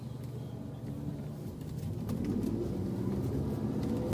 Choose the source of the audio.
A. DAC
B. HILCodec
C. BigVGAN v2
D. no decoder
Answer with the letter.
D